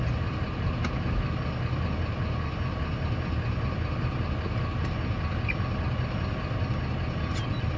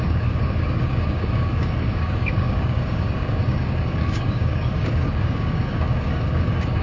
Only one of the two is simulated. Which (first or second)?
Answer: second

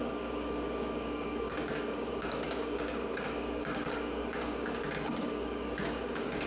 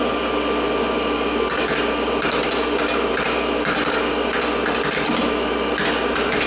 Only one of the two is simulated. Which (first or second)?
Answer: first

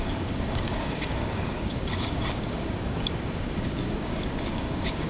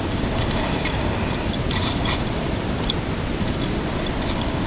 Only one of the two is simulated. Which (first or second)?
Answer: first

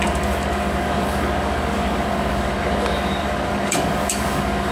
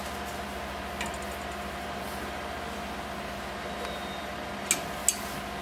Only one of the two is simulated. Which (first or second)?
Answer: first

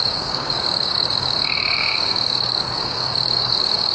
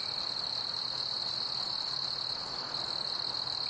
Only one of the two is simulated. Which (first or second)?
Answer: first